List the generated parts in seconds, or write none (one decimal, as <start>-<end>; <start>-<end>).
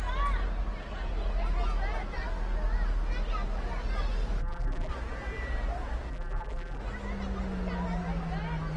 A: 4.4-4.9; 6.1-6.8